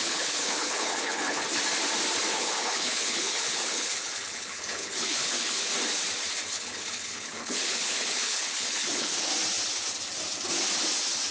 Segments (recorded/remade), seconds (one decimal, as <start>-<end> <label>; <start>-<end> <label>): 0.0-1.4 remade; 1.4-2.3 recorded; 2.3-5.7 remade; 5.7-6.5 recorded; 6.5-9.3 remade; 9.3-11.3 recorded